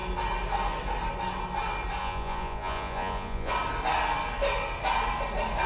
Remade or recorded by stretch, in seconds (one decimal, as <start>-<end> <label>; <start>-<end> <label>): 0.0-2.0 recorded; 2.0-3.5 remade; 3.5-5.7 recorded